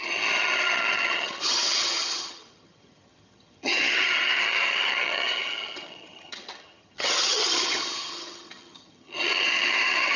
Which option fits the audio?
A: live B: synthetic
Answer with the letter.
B